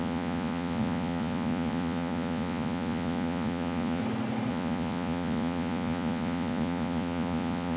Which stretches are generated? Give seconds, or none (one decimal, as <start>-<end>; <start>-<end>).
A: 0.0-4.0; 4.5-7.8